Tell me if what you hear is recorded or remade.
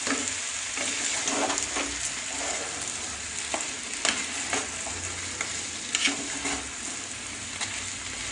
recorded